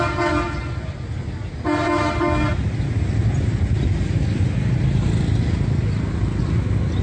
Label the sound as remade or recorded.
recorded